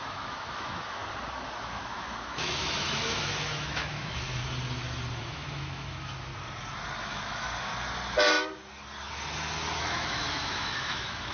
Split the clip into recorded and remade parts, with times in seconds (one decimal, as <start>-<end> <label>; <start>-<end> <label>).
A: 0.0-1.0 remade; 1.0-1.6 recorded; 1.6-4.4 remade; 4.4-5.2 recorded; 5.2-6.3 remade; 6.3-7.0 recorded; 7.0-7.7 remade; 7.7-9.8 recorded; 9.8-11.3 remade